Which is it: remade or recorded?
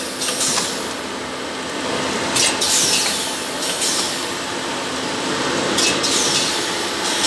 recorded